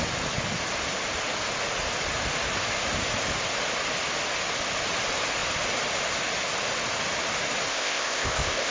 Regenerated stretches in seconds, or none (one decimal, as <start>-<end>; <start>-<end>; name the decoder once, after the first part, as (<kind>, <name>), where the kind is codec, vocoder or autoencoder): 7.7-8.7 (codec, ZipCodec)